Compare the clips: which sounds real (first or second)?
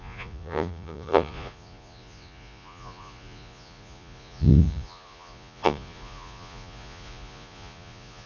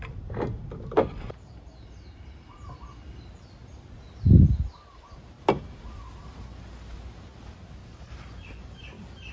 second